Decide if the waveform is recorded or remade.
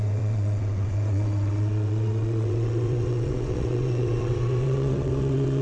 remade